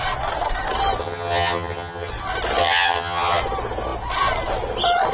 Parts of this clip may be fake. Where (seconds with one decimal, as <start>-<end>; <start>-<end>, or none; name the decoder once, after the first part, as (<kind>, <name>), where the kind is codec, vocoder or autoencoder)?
1.0-2.1 (vocoder, HiFi-GAN); 2.6-3.4